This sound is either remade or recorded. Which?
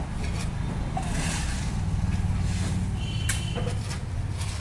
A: recorded